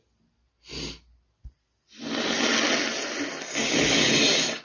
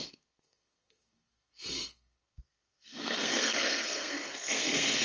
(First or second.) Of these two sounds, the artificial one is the second